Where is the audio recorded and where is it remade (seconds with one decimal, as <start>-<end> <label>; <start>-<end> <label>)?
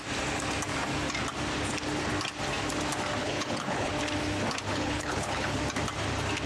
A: 0.0-3.2 recorded; 3.2-3.9 remade; 3.9-4.7 recorded; 4.7-5.6 remade; 5.6-6.5 recorded